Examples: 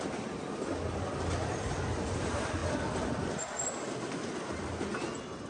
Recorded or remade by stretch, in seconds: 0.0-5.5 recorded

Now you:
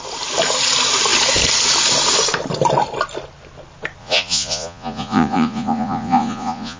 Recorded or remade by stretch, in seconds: 0.0-4.0 recorded; 4.0-6.8 remade

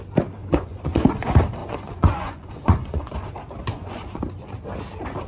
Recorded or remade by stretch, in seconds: 0.0-0.4 recorded; 0.4-1.1 remade; 1.1-1.6 recorded; 1.6-3.1 remade; 3.1-3.6 recorded; 3.6-4.2 remade; 4.2-5.3 recorded

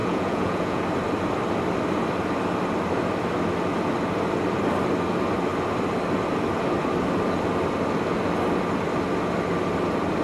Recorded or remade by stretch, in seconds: 0.0-0.8 remade; 0.8-10.2 recorded